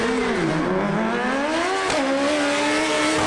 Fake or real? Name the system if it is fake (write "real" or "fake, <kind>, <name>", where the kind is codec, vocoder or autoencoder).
real